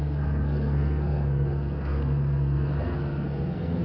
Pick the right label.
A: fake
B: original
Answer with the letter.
A